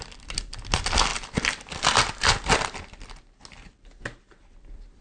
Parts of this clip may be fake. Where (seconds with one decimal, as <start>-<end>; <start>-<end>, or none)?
none